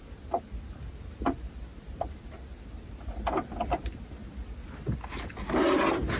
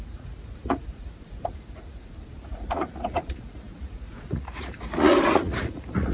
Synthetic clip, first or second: second